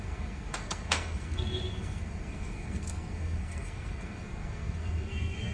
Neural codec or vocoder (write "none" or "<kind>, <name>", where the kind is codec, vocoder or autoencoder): codec, SNAC